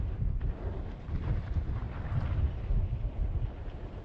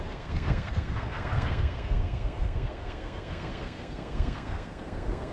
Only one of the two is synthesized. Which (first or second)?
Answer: second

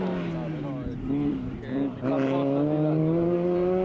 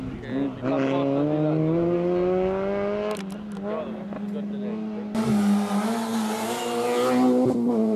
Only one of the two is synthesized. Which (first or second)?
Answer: first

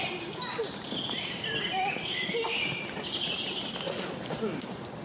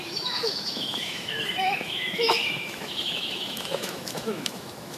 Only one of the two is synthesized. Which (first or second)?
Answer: second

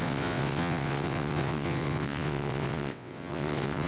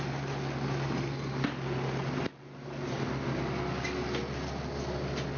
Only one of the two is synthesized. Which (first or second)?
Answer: first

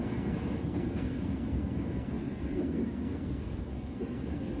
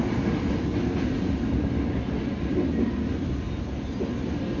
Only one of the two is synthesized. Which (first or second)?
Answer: first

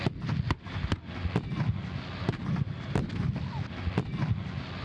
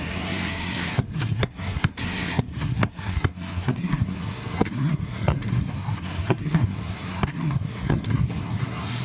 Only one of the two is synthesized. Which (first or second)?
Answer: second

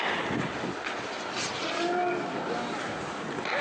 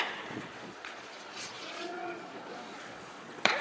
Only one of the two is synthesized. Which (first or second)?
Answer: second